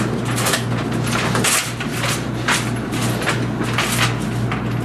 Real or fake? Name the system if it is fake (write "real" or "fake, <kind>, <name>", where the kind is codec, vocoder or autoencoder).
real